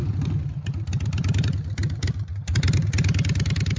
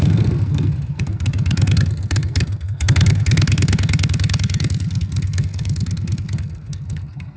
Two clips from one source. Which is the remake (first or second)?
second